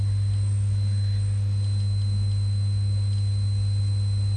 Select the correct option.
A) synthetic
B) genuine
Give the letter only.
B